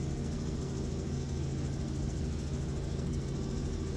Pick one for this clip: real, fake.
fake